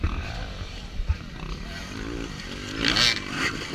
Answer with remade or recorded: recorded